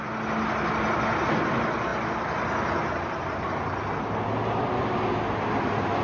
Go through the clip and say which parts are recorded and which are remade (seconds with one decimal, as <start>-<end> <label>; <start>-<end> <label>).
0.0-6.0 recorded